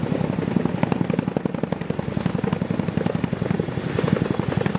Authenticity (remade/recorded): remade